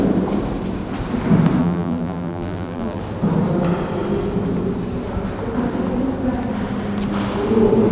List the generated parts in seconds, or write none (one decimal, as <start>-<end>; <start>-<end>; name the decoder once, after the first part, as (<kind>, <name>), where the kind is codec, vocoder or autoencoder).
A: 1.6-3.0 (vocoder, BigVGAN v2)